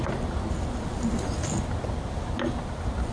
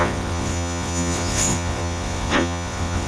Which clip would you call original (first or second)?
first